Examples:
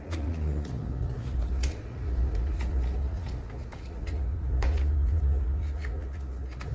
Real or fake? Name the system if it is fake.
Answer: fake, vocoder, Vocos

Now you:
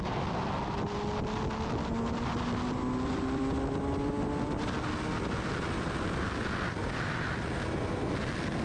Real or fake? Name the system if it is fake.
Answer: real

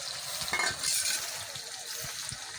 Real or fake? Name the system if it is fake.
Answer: real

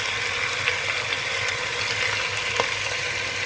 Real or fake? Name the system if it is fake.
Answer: real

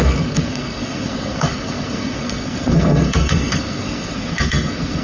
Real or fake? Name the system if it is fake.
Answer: fake, codec, SNAC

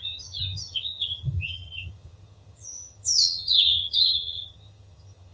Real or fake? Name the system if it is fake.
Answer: fake, vocoder, HiFi-GAN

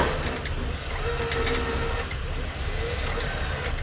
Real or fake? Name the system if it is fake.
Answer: real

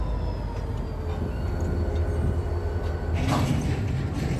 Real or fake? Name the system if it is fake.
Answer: real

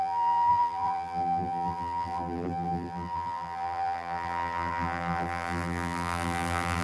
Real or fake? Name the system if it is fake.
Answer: fake, vocoder, BigVGAN v2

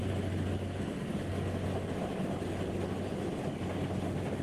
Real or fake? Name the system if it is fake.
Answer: real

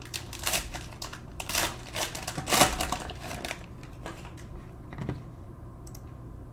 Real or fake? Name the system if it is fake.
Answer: fake, vocoder, BigVGAN v2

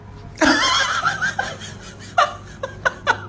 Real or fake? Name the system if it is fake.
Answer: real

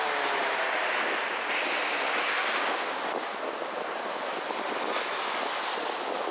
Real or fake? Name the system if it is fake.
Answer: real